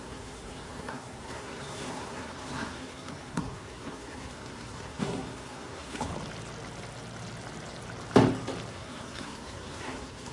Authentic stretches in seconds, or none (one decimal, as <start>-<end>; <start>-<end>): 6.1-8.7